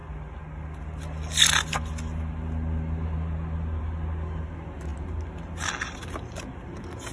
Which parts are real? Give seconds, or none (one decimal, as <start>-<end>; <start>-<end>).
0.0-7.1